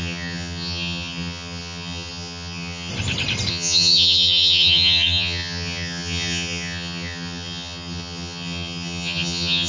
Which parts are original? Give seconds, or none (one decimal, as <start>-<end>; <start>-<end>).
2.9-3.5